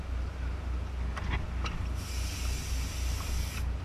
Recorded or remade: recorded